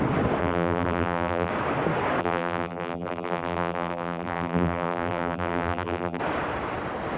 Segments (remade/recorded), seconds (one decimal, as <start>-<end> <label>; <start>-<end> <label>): 0.0-0.4 recorded; 0.4-1.5 remade; 1.5-2.2 recorded; 2.2-6.2 remade; 6.2-7.2 recorded